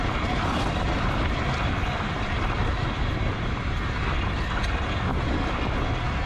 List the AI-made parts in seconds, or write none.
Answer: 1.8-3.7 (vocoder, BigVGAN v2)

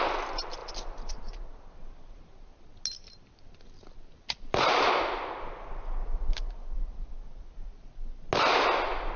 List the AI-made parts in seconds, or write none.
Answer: none

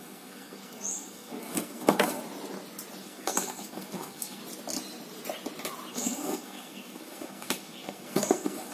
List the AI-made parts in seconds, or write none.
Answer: 0.0-2.2 (codec, SNAC); 3.0-4.4; 5.9-8.7

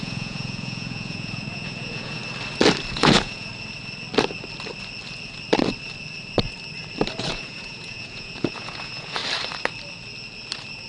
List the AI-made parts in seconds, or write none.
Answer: 0.0-2.2 (vocoder, Vocos); 2.9-3.5; 7.3-9.2

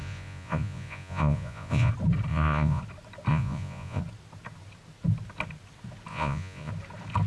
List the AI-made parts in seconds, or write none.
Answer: 0.0-1.9 (vocoder, Vocos); 2.3-2.8; 3.3-4.0; 6.1-6.7

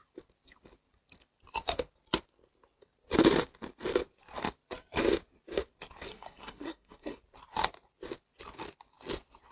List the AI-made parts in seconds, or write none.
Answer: 6.1-7.2 (codec, SNAC)

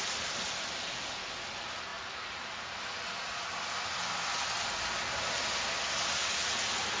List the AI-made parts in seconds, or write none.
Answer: none

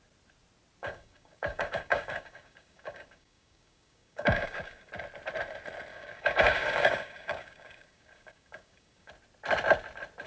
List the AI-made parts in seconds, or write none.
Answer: 0.8-4.9 (codec, DAC); 5.9-9.1